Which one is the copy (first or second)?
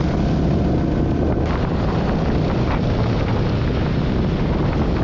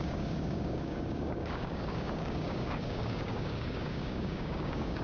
second